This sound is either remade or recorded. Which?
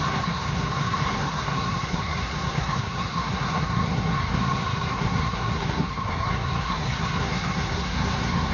remade